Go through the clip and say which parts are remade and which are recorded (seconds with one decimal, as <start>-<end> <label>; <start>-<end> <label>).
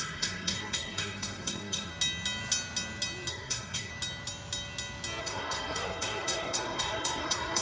0.0-1.9 remade; 1.9-3.3 recorded; 3.3-3.9 remade; 3.9-5.2 recorded; 5.2-7.6 remade